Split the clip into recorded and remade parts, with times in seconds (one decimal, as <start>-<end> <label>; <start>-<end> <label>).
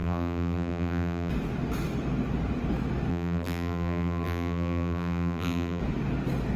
0.0-1.3 remade; 1.3-3.1 recorded; 3.1-5.8 remade; 5.8-6.6 recorded